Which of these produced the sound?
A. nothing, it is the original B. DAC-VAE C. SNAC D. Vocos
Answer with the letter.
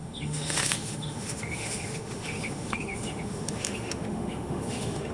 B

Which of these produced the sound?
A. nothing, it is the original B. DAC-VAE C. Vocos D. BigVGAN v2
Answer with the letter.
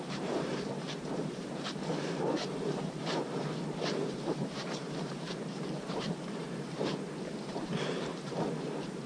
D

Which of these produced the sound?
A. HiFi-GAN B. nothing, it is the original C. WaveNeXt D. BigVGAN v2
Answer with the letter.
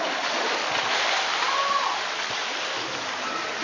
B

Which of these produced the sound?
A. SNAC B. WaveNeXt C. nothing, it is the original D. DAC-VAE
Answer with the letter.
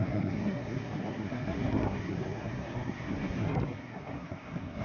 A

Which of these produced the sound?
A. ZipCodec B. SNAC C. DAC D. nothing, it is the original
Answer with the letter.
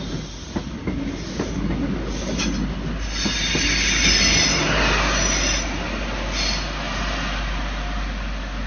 D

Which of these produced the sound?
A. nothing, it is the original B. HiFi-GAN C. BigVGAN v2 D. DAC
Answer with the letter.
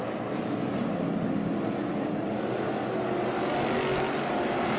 A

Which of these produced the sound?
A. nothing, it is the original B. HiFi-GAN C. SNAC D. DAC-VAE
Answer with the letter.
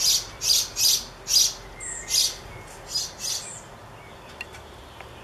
A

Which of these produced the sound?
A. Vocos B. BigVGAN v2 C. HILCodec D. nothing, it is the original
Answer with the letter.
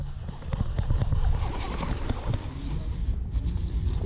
D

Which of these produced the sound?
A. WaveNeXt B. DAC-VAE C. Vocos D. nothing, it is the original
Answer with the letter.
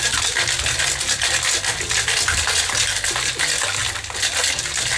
D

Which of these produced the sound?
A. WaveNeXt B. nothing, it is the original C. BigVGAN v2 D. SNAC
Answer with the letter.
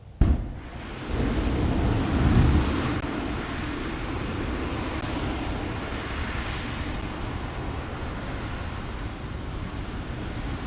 B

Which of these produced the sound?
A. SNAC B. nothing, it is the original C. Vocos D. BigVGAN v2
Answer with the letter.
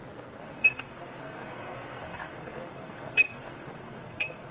A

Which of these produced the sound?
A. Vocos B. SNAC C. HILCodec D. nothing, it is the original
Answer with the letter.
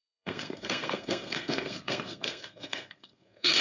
B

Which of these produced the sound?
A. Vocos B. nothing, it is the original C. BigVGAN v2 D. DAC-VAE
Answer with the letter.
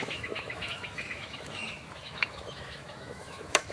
D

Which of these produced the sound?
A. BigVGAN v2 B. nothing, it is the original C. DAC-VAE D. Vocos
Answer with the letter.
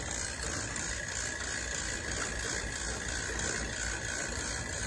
A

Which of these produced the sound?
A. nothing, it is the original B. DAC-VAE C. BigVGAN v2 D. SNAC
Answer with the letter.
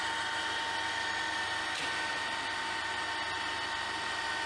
A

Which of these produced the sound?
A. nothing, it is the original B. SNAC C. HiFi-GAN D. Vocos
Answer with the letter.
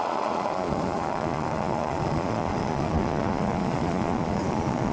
D